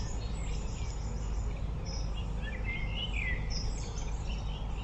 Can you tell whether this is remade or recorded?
recorded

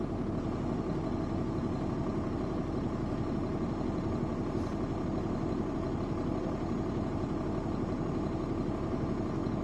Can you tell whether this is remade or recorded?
recorded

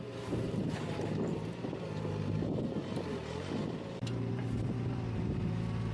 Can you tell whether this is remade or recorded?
remade